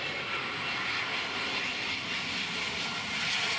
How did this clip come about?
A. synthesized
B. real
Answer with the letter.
B